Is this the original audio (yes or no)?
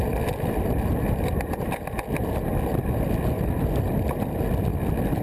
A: yes